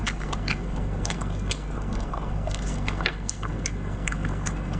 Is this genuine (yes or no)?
no